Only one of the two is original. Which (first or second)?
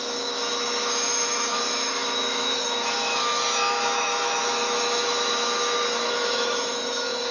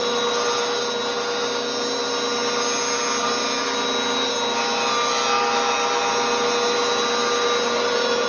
second